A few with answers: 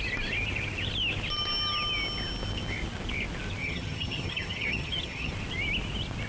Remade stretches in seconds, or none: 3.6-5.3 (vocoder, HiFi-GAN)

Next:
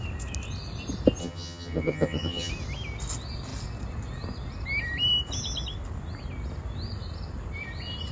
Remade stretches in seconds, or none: 1.2-2.5 (vocoder, HiFi-GAN)

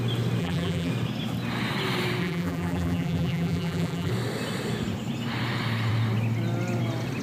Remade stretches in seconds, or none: 0.4-0.9 (vocoder, BigVGAN v2); 2.2-4.1